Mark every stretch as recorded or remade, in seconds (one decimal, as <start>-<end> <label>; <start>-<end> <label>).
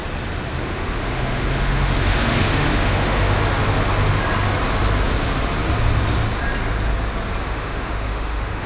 0.0-0.6 recorded; 0.6-3.4 remade; 3.4-7.4 recorded; 7.4-8.7 remade